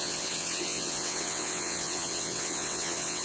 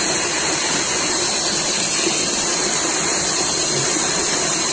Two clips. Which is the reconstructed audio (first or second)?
first